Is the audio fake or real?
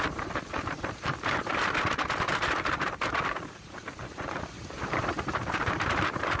fake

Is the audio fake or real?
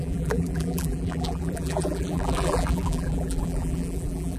fake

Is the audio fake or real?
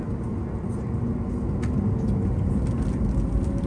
real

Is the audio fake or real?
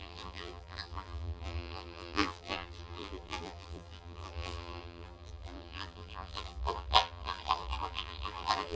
fake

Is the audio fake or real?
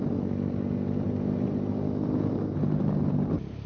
real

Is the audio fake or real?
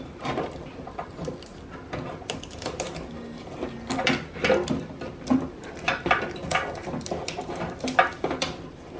fake